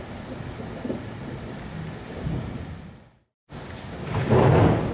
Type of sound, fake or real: real